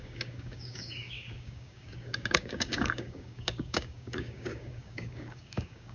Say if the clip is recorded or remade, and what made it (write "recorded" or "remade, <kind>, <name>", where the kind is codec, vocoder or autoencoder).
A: remade, codec, DAC